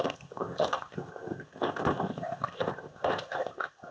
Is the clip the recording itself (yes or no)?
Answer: no